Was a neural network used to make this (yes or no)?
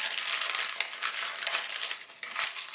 no